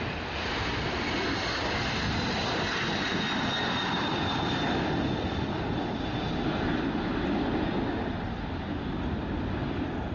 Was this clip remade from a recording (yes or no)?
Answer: no